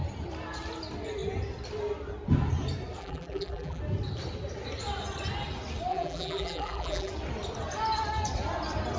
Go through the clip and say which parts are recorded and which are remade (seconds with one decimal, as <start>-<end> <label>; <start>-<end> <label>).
0.0-3.0 recorded; 3.0-3.8 remade; 3.8-5.9 recorded; 5.9-7.1 remade; 7.1-9.0 recorded